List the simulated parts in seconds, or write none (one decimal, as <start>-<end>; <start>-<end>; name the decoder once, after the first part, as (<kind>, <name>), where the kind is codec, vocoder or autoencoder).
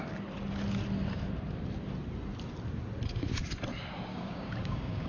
4.1-5.1 (codec, DAC)